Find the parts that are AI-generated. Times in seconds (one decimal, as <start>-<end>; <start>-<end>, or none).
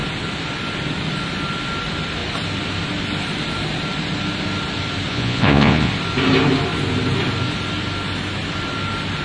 5.1-5.9